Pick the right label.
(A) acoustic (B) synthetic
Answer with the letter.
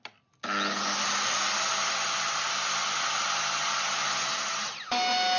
A